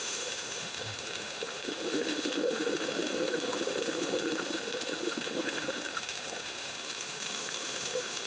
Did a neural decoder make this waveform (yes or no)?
yes